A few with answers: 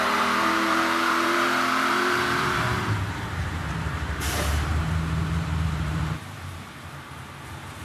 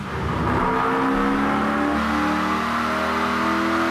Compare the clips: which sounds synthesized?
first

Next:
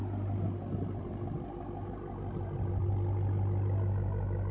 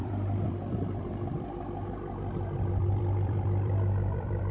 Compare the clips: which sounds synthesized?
second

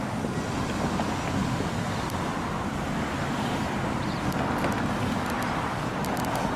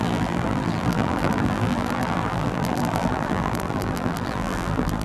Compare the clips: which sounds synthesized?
second